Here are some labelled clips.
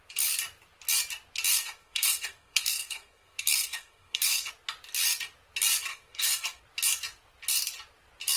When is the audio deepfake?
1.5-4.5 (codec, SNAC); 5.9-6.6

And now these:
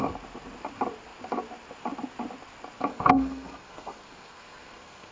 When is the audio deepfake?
2.9-5.1 (codec, SNAC)